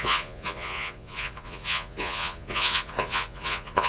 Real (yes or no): no